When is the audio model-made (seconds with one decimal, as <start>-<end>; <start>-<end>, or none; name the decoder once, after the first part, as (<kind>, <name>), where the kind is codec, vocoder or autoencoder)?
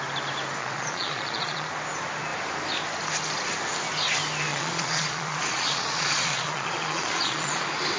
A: 0.6-1.7 (vocoder, Vocos); 4.5-7.6